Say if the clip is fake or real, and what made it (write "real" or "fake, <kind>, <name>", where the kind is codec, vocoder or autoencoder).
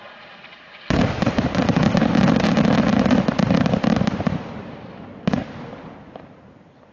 fake, vocoder, BigVGAN v2